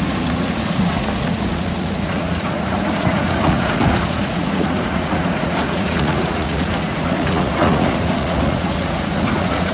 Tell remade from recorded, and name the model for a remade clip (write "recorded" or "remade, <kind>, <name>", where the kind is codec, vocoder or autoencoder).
remade, vocoder, Vocos